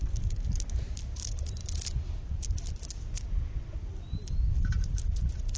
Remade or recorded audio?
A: recorded